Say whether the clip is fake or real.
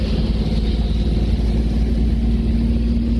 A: real